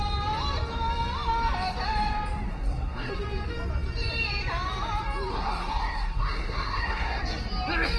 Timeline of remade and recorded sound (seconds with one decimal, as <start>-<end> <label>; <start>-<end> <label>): 0.0-2.5 recorded; 2.5-3.1 remade; 3.1-5.3 recorded; 5.3-7.2 remade; 7.2-8.0 recorded